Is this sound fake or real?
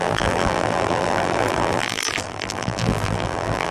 fake